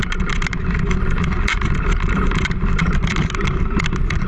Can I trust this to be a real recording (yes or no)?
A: yes